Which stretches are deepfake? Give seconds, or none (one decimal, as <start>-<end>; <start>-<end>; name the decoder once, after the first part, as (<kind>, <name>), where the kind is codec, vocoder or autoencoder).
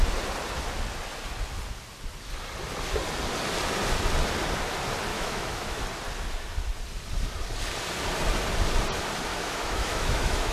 5.1-5.8 (autoencoder, DAC-VAE); 9.3-10.5